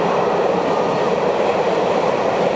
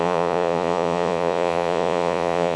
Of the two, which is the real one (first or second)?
first